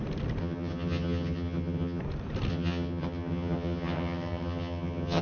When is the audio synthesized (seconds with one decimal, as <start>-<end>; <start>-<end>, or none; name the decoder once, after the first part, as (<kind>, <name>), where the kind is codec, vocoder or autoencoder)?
0.4-2.0 (vocoder, HiFi-GAN); 2.5-5.2